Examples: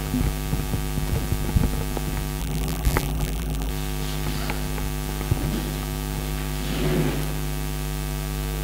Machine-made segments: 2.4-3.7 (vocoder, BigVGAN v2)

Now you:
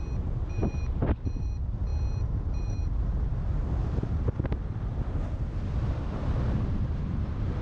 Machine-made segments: 0.0-1.9 (vocoder, BigVGAN v2); 2.6-3.8; 5.6-7.6

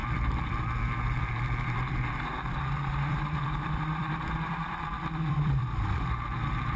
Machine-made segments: 0.0-6.8 (vocoder, BigVGAN v2)

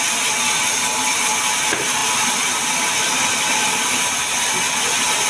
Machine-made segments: none

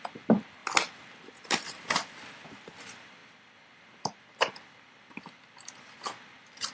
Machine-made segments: 0.0-6.7 (vocoder, BigVGAN v2)